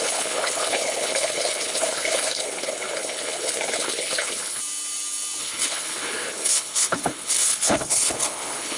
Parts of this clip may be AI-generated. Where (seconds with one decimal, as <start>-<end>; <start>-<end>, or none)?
0.0-4.6; 5.4-8.8